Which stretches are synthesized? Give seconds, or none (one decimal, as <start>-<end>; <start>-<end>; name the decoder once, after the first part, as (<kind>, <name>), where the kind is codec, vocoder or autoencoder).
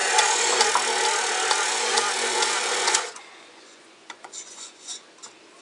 0.0-0.6 (vocoder, Vocos); 1.7-5.1